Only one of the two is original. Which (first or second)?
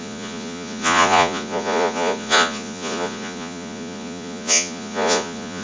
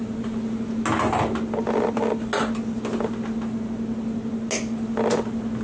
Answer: second